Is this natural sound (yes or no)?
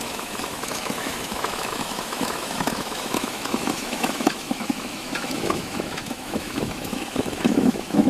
no